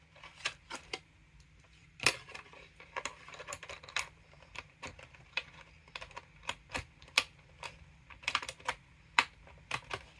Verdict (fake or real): real